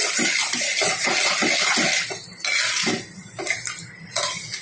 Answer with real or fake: real